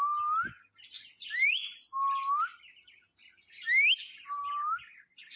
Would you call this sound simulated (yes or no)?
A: no